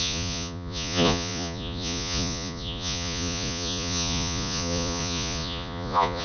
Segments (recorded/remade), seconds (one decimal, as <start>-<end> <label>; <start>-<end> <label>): 0.0-6.2 remade